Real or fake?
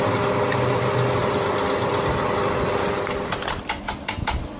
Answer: real